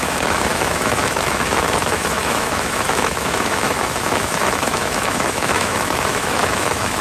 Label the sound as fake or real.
fake